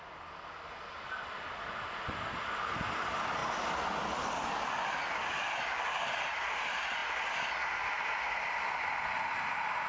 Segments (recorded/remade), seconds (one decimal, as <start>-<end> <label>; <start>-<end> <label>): 0.0-9.9 recorded